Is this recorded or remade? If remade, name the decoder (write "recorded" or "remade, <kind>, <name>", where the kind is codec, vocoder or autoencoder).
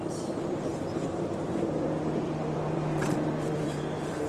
remade, vocoder, BigVGAN v2